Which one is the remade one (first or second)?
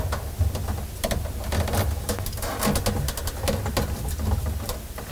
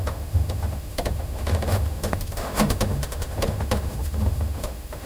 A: second